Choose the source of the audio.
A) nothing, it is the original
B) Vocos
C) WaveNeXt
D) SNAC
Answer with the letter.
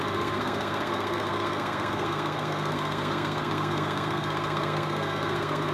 D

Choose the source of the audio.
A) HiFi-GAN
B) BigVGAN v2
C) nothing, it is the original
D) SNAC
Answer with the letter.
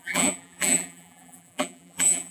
B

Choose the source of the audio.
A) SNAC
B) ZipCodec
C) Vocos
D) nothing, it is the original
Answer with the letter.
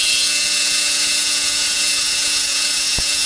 C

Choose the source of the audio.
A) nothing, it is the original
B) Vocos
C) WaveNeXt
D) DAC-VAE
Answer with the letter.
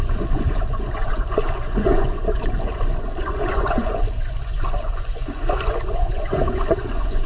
B